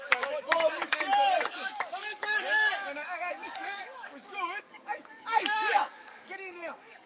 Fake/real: fake